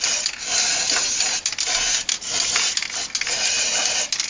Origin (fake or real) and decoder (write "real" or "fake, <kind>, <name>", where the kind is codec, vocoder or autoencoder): real